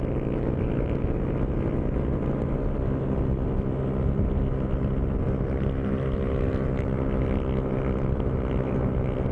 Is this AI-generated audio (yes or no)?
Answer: no